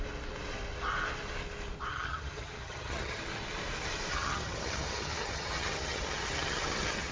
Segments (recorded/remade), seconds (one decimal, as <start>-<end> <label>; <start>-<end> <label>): 0.0-1.9 recorded; 1.9-3.2 remade; 3.2-4.1 recorded; 4.1-7.1 remade